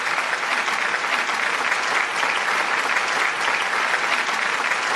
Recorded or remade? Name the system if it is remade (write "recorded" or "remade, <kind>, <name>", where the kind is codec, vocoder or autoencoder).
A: recorded